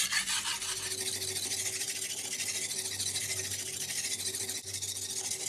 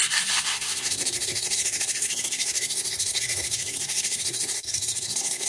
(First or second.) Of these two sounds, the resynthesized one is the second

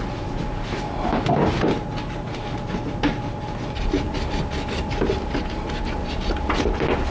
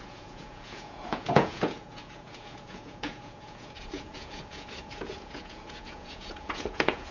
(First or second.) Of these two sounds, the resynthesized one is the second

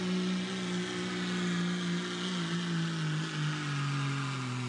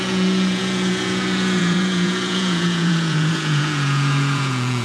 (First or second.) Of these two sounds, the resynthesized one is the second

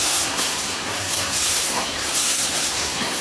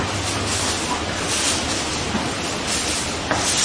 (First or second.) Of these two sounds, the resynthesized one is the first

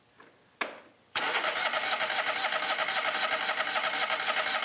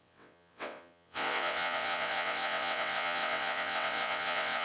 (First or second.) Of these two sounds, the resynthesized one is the second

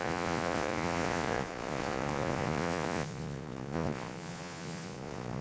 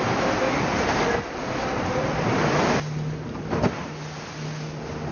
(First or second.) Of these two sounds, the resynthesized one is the first